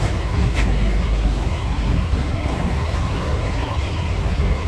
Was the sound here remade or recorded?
remade